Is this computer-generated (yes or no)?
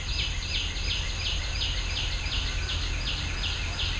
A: no